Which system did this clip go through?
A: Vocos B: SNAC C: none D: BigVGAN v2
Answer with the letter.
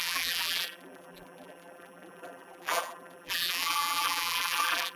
D